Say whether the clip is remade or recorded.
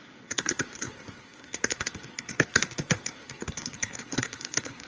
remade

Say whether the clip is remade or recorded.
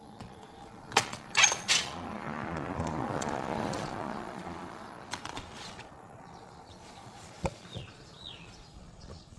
remade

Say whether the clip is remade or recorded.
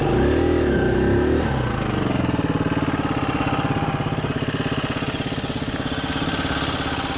recorded